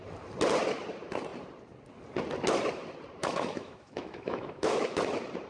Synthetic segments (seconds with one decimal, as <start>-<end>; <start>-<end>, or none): 3.2-5.0